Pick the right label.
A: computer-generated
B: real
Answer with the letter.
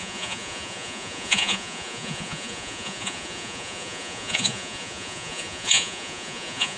A